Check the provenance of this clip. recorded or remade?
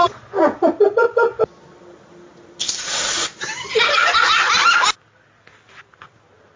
recorded